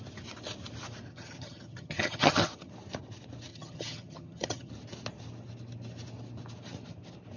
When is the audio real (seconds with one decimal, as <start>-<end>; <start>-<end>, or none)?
0.0-1.1; 2.7-3.5; 4.7-7.4